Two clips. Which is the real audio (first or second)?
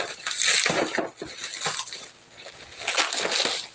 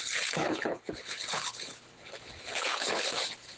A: first